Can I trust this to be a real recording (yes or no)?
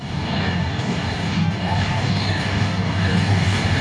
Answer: no